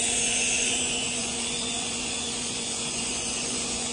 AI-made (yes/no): yes